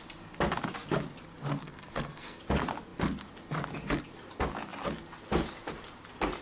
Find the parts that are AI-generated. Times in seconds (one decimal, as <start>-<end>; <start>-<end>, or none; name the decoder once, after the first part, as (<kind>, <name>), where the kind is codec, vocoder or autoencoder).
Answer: 1.6-2.4 (codec, SNAC)